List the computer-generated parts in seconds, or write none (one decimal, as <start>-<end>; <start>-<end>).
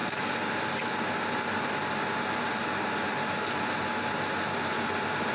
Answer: none